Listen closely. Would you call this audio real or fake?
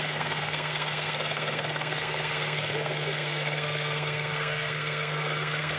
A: fake